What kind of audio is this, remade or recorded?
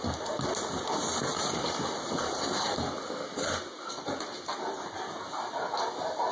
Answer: remade